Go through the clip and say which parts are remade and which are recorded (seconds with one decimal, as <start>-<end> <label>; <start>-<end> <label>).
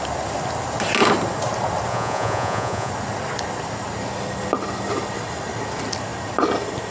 0.0-1.9 recorded; 1.9-2.9 remade; 2.9-6.9 recorded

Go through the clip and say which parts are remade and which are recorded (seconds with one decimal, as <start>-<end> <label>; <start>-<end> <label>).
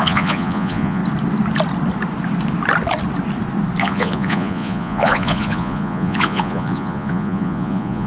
0.0-1.0 remade; 1.0-3.8 recorded; 3.8-8.1 remade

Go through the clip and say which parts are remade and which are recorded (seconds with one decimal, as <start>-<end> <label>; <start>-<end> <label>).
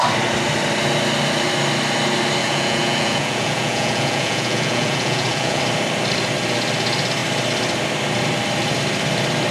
0.0-2.4 recorded; 2.4-5.6 remade; 5.6-9.5 recorded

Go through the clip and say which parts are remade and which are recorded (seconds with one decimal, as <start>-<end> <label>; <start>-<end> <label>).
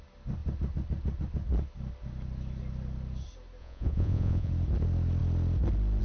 0.0-3.6 recorded; 3.6-4.5 remade; 4.5-6.0 recorded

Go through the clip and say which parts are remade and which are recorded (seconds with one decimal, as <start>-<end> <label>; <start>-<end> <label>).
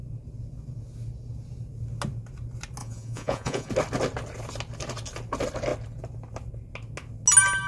0.0-2.8 recorded; 2.8-3.7 remade; 3.7-7.7 recorded